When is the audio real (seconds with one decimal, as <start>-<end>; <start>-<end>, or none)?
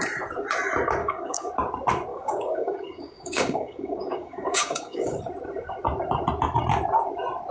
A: 0.0-1.0; 1.5-2.1; 5.2-7.5